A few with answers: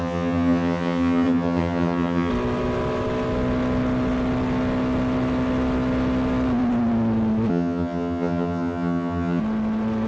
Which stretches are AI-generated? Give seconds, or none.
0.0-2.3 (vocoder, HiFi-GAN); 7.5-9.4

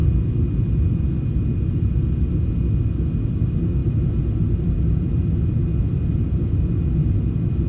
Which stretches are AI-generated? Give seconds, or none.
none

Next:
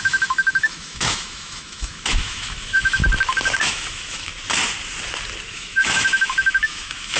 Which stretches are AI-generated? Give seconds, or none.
0.0-3.0 (autoencoder, DAC-VAE); 3.6-4.3; 5.5-7.2

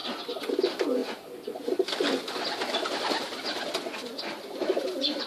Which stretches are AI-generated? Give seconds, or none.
none

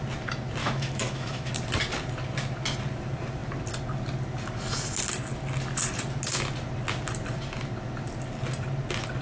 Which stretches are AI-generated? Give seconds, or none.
0.6-1.5 (autoencoder, DAC-VAE)